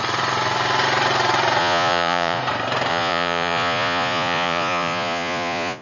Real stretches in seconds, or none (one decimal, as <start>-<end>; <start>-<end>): 0.0-1.6; 2.4-2.9